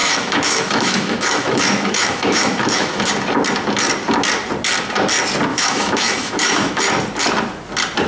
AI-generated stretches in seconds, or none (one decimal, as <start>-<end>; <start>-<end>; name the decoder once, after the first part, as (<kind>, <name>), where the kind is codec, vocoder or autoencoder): 0.0-3.1 (autoencoder, DAC-VAE); 5.5-6.8